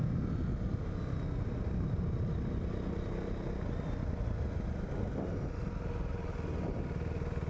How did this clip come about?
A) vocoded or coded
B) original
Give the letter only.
B